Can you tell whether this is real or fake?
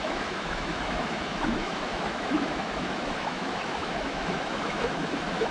fake